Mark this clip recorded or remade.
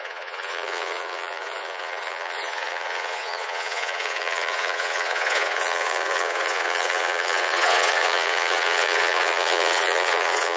remade